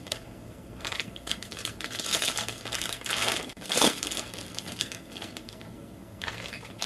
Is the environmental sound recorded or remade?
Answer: remade